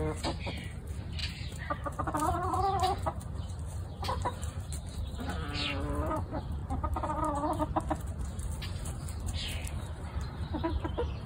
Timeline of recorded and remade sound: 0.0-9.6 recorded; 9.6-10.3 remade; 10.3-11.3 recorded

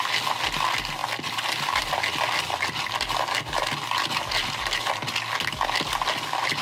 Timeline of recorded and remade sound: 0.0-6.6 recorded

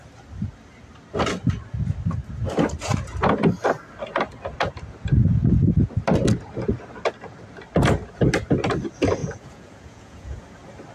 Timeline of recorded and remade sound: 0.0-9.2 recorded; 9.2-10.4 remade; 10.4-10.9 recorded

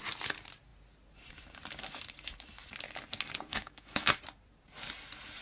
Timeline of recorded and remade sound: 0.0-3.5 recorded; 3.5-4.1 remade; 4.1-5.4 recorded

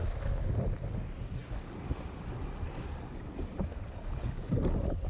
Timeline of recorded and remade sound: 0.0-5.1 recorded

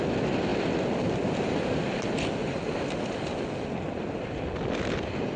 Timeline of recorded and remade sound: 0.0-5.4 recorded

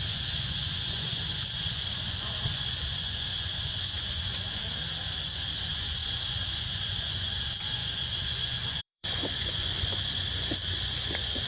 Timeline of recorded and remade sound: 0.0-4.6 remade; 4.6-5.2 recorded; 5.2-11.5 remade